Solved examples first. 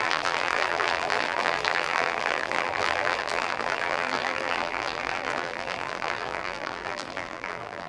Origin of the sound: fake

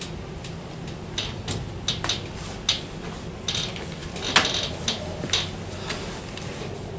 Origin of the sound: real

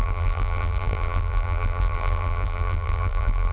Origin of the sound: fake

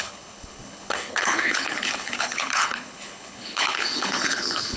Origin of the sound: fake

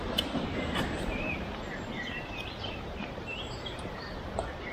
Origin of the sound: fake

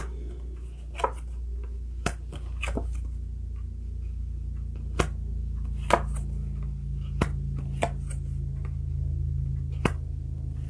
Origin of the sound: real